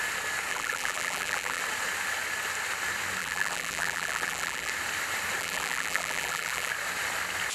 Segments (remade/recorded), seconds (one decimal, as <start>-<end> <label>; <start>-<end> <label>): 0.0-0.5 recorded; 0.5-1.6 remade; 1.6-3.2 recorded; 3.2-4.7 remade; 4.7-5.4 recorded; 5.4-6.7 remade; 6.7-7.5 recorded